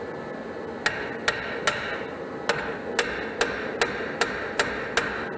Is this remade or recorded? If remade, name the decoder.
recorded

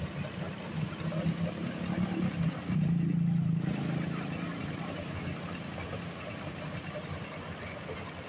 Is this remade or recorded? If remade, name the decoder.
recorded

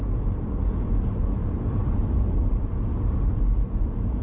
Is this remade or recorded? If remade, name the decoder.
recorded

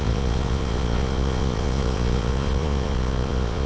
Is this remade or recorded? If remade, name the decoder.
remade, vocoder, Vocos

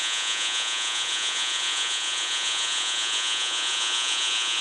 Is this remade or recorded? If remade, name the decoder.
remade, vocoder, Vocos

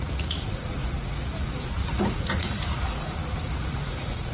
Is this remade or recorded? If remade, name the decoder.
remade, vocoder, Vocos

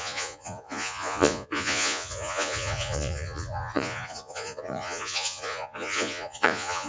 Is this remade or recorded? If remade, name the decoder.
remade, vocoder, Vocos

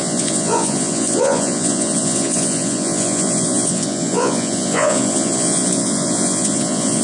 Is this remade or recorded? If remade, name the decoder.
remade, vocoder, Vocos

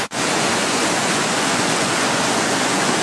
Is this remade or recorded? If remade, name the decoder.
remade, vocoder, Vocos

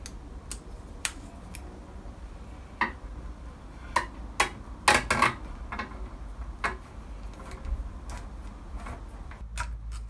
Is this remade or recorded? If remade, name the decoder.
recorded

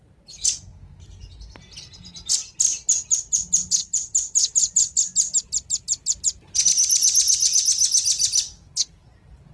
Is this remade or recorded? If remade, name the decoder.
recorded